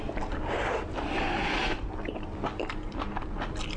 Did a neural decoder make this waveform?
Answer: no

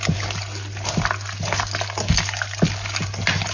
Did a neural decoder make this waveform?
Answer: no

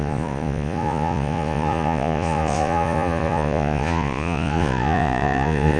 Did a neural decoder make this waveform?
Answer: yes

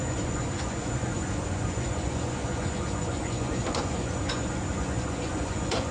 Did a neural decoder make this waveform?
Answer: yes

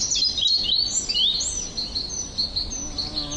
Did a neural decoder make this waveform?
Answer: no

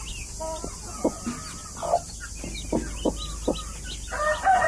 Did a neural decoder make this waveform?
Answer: no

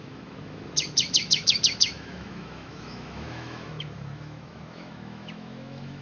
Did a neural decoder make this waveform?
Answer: yes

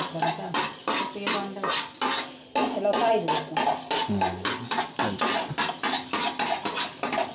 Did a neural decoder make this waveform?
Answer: no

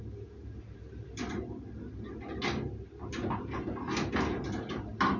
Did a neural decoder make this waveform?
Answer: no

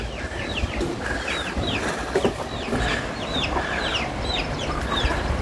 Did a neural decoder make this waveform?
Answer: no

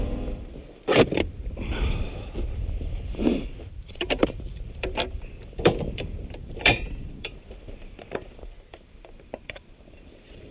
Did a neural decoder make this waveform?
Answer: yes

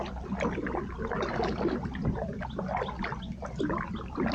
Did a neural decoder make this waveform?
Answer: no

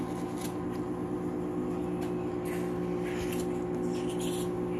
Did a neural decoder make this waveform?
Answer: no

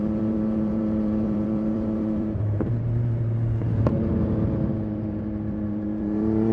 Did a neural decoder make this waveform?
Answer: yes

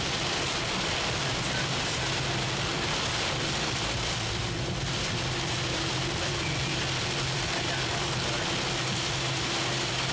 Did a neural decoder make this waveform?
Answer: yes